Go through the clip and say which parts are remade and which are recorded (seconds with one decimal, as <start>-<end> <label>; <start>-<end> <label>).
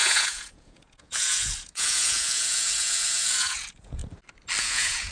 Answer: 0.0-4.0 remade; 4.0-4.6 recorded; 4.6-5.1 remade